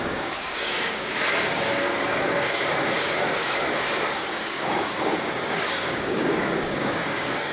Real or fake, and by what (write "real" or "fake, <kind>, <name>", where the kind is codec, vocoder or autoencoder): fake, codec, DAC